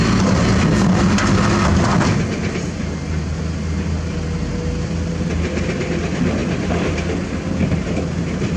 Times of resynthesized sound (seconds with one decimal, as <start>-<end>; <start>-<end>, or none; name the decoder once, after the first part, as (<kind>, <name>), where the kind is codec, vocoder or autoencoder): none